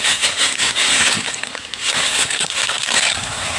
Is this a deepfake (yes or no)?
yes